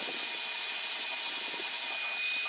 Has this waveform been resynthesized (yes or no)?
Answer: no